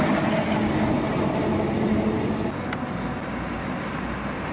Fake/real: real